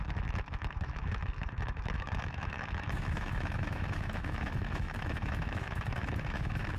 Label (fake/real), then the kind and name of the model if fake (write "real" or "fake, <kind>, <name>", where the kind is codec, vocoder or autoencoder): fake, autoencoder, DAC-VAE